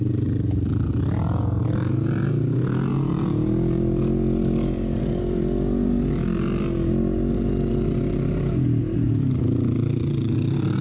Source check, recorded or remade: recorded